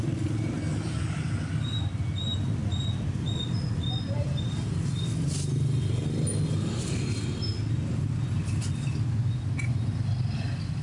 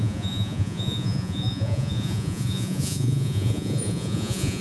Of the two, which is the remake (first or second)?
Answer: second